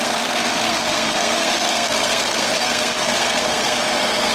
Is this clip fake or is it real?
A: fake